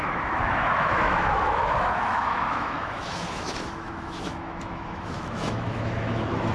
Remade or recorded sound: remade